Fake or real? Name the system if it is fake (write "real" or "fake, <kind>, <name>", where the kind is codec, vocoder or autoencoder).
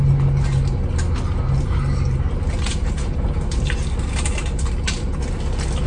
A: real